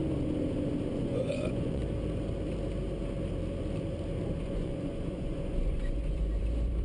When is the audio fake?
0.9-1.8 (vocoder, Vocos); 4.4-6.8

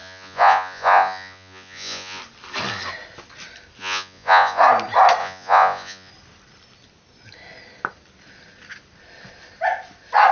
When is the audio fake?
0.0-2.2 (vocoder, Vocos); 3.8-4.6; 5.2-6.1

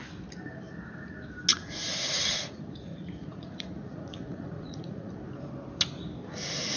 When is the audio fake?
1.5-5.1 (vocoder, Vocos)

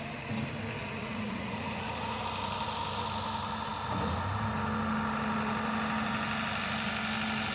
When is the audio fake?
0.8-2.2 (vocoder, Vocos)

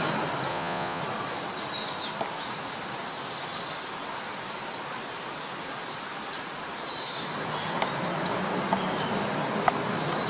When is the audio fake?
0.5-1.0 (vocoder, Vocos)

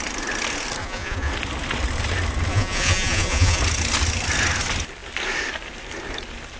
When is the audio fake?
0.8-1.3 (vocoder, Vocos); 2.5-3.6

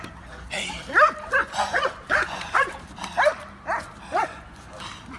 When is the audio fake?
1.4-2.7 (vocoder, Vocos); 4.1-4.8